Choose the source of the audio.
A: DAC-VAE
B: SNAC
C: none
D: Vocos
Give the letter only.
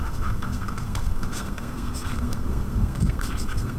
B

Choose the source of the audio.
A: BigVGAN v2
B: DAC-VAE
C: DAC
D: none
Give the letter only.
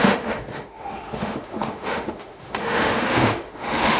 B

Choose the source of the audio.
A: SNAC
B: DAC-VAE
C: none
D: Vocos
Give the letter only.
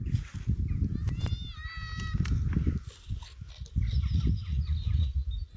C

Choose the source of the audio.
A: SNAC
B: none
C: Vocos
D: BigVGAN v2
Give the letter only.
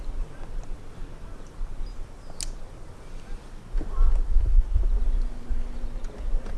B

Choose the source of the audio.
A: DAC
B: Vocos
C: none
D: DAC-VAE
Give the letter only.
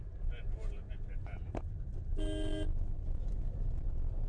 C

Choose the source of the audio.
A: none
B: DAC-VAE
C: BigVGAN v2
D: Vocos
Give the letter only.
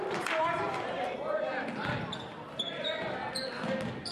A